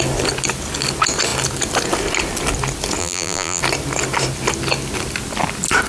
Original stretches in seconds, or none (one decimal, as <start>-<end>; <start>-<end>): 0.0-3.0; 3.6-5.9